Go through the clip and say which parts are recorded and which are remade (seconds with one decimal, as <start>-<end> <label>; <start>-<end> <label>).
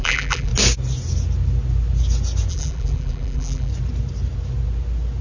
0.0-0.5 remade; 0.5-2.5 recorded; 2.5-3.7 remade; 3.7-5.2 recorded